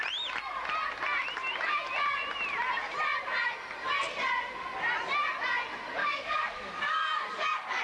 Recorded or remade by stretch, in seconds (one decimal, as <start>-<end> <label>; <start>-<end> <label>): 0.0-6.0 recorded; 6.0-7.8 remade